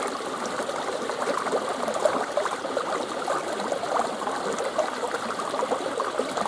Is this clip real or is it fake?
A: real